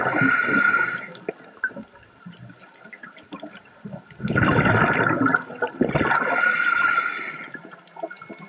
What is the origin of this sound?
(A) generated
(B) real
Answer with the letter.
B